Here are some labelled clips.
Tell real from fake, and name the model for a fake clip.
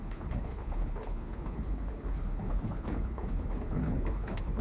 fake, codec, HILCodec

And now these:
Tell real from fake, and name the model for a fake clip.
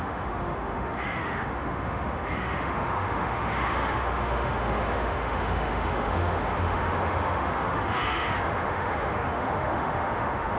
fake, autoencoder, DAC-VAE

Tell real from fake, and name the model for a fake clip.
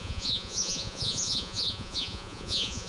fake, vocoder, Vocos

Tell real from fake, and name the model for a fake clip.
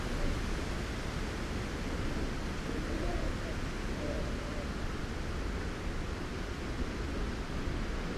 real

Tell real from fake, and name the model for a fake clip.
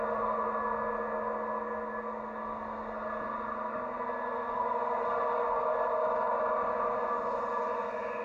real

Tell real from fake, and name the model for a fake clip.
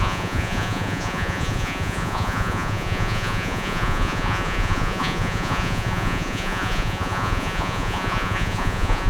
fake, vocoder, Vocos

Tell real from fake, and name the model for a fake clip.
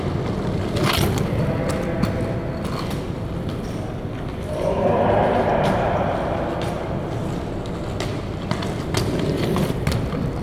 real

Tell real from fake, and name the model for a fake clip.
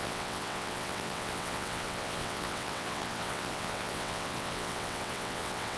fake, vocoder, WaveNeXt